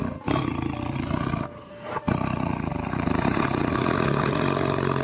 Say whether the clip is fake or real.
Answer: real